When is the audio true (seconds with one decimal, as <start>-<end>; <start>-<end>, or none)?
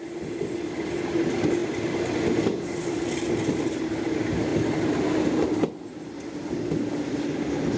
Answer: 0.0-7.8